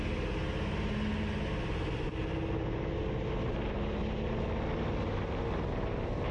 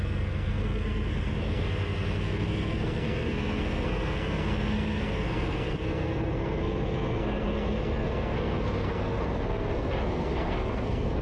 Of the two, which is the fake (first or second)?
second